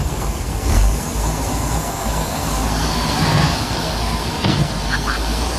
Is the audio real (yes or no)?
no